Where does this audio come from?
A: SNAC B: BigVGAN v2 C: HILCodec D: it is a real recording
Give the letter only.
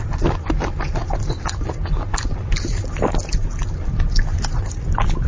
D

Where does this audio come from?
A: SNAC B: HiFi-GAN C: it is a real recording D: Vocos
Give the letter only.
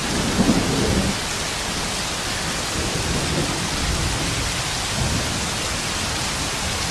C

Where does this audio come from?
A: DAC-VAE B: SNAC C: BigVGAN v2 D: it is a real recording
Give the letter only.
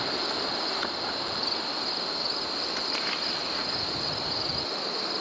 D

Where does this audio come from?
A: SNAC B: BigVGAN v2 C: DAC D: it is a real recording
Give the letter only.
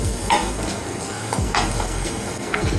A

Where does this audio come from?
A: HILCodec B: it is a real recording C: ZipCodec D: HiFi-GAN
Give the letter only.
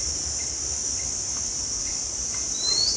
B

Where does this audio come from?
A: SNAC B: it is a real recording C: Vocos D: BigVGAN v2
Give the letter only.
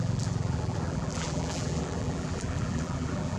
D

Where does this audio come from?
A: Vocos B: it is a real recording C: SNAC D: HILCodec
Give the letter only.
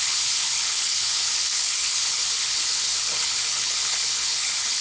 D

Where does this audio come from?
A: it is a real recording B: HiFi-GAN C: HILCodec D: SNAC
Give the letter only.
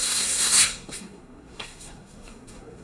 D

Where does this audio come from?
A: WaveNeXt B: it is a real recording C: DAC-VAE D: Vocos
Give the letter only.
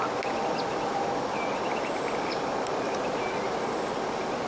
B